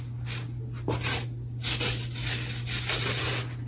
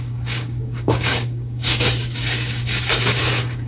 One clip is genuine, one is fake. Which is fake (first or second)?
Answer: second